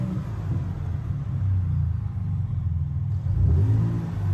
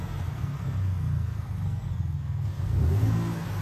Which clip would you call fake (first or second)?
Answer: second